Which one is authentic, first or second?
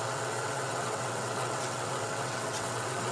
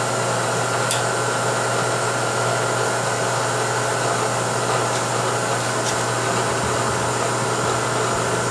second